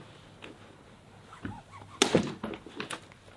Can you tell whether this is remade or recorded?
recorded